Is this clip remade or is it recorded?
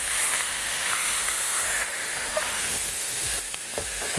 remade